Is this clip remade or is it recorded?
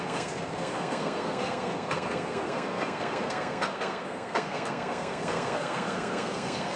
remade